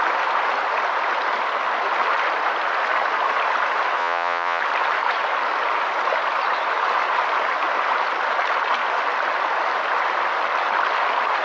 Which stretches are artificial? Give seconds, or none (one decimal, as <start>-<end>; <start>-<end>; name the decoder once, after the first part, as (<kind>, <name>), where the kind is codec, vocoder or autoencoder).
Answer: 4.0-4.6 (vocoder, Vocos)